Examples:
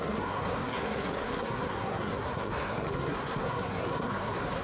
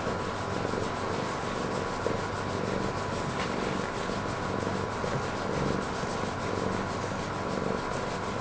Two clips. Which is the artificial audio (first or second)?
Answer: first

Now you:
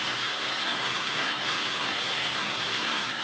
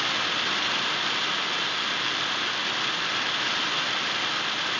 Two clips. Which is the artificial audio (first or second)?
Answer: first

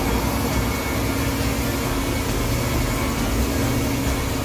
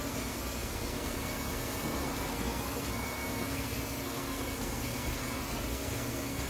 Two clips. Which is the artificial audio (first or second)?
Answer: second